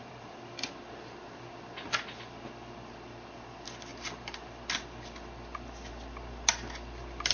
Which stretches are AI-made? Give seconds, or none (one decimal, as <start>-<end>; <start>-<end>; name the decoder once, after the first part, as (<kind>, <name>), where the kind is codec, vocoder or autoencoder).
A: none